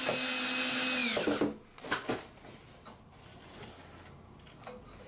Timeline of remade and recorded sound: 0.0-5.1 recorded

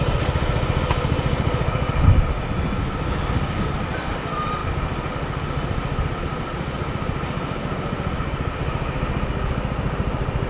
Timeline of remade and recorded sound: 0.0-2.8 recorded; 2.8-3.7 remade; 3.7-10.5 recorded

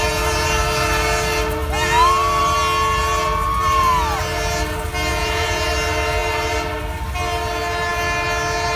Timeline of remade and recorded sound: 0.0-5.1 recorded; 5.1-5.7 remade; 5.7-8.8 recorded

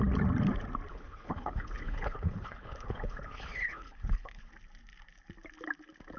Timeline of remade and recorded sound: 0.0-0.9 recorded; 0.9-4.5 remade; 4.5-6.2 recorded